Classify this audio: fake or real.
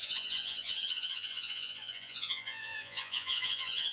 fake